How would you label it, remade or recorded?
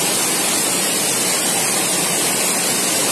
recorded